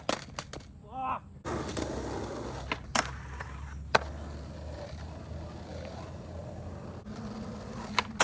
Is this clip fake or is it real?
real